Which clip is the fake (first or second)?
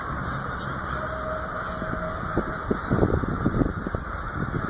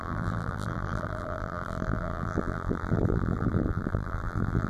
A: second